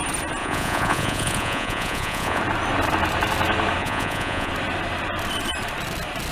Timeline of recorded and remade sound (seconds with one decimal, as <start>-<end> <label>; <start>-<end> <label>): 0.0-0.4 recorded; 0.4-2.4 remade; 2.4-3.8 recorded; 3.8-4.5 remade; 4.5-6.3 recorded